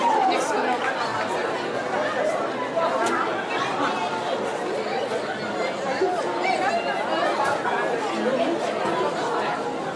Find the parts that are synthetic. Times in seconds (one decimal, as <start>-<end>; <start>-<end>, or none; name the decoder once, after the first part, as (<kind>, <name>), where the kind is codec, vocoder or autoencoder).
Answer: none